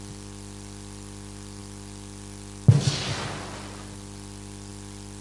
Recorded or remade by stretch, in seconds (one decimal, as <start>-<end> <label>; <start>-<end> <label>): 0.0-5.2 recorded